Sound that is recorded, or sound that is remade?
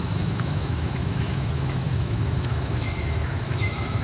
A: remade